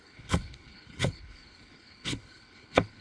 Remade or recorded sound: remade